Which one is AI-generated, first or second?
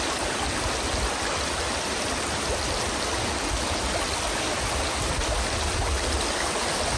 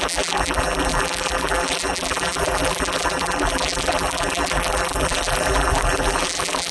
second